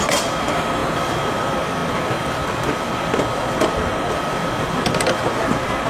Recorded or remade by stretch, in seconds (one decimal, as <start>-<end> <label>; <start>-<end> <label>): 0.0-5.9 remade